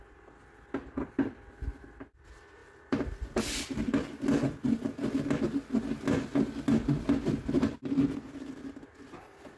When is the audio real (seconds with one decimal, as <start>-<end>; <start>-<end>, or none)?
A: 0.0-2.6; 3.4-9.6